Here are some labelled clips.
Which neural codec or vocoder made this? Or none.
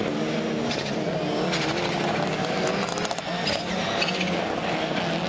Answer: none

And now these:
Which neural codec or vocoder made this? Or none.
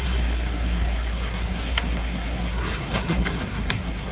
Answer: codec, SNAC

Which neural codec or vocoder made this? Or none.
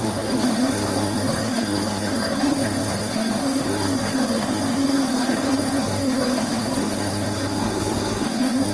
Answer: codec, SNAC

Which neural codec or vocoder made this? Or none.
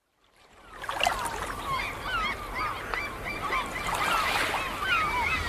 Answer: none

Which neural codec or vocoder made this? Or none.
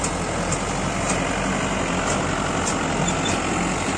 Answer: none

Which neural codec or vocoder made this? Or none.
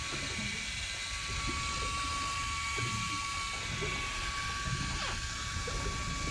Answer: none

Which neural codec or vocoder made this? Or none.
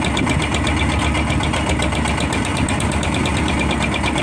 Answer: none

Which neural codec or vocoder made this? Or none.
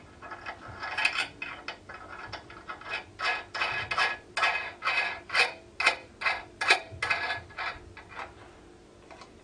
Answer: none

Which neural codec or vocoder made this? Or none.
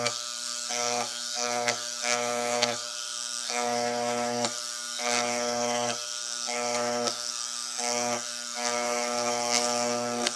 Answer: codec, SNAC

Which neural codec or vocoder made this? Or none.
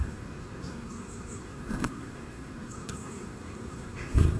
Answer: codec, SNAC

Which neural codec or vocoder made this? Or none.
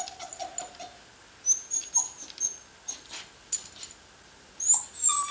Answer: none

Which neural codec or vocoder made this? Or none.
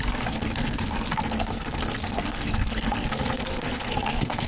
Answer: codec, SNAC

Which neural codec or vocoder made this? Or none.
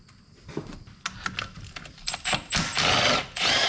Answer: none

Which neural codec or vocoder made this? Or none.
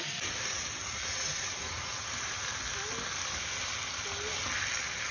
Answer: none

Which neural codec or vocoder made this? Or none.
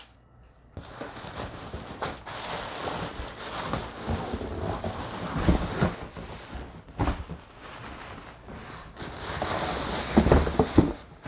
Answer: none